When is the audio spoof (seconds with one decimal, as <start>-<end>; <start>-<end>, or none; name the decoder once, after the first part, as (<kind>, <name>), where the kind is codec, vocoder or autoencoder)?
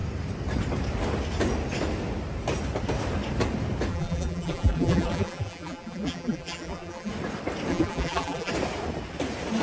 3.9-7.1 (vocoder, BigVGAN v2); 7.7-8.5